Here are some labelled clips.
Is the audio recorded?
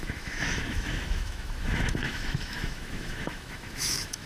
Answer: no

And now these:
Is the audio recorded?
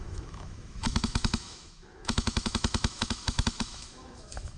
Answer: no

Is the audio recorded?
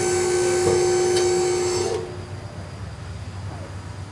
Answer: yes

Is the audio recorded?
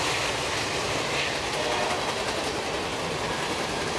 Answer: yes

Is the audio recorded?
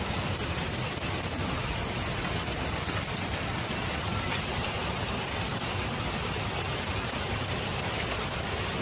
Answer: yes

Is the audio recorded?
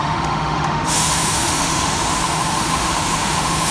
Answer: no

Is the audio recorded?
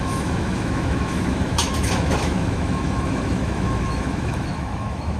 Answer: no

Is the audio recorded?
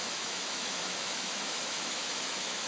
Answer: no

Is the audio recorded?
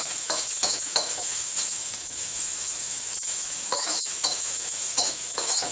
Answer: no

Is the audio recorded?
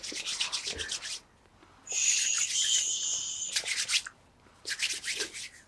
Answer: yes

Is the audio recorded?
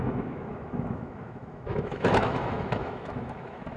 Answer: no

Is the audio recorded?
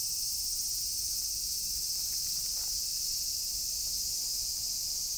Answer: yes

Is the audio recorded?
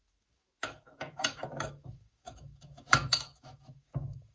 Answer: no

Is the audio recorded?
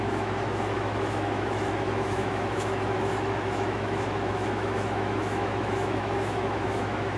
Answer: no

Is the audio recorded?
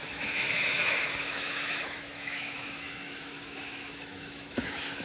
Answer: no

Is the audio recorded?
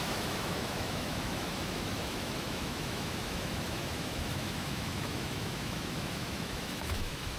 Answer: no